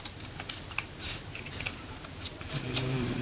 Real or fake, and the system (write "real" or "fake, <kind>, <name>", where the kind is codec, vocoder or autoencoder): fake, vocoder, BigVGAN v2